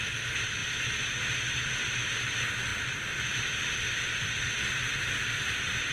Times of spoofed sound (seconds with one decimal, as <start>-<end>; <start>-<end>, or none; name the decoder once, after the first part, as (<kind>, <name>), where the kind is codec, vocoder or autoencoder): none